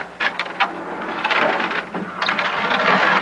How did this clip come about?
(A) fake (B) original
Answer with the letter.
B